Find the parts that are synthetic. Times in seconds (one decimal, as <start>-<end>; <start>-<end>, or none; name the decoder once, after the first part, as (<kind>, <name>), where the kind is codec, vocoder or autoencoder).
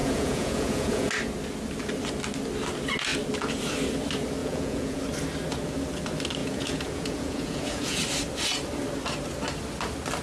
0.0-1.1 (vocoder, Vocos); 4.4-5.0; 6.4-8.0